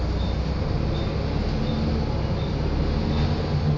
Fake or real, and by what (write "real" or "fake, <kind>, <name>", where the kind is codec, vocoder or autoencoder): real